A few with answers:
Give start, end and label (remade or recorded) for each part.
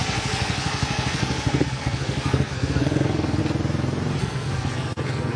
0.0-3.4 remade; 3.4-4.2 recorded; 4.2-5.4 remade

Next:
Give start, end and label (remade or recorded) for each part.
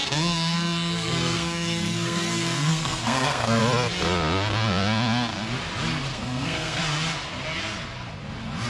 0.0-3.6 remade; 3.6-6.1 recorded; 6.1-6.8 remade; 6.8-8.7 recorded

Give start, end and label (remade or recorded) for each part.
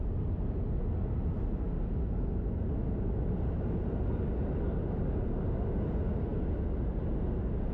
0.0-7.7 recorded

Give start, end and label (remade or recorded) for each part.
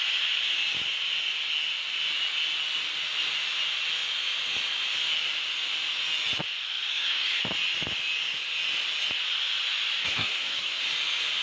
0.0-6.9 recorded; 6.9-7.4 remade; 7.4-10.0 recorded; 10.0-10.8 remade; 10.8-11.4 recorded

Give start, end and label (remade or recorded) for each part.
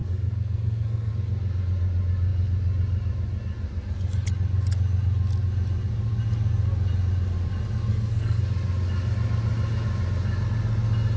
0.0-1.1 remade; 1.1-7.9 recorded; 7.9-8.4 remade; 8.4-11.2 recorded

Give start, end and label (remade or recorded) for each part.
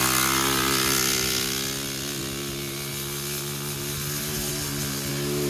0.0-5.5 recorded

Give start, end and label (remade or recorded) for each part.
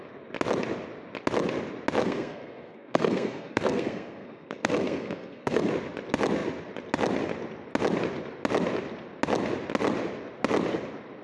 0.0-2.0 recorded; 2.0-5.7 remade; 5.7-11.2 recorded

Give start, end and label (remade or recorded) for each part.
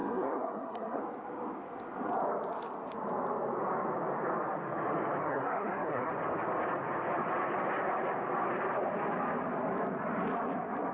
0.0-1.0 remade; 1.0-5.2 recorded; 5.2-6.1 remade; 6.1-10.9 recorded